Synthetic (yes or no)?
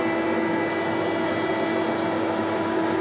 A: no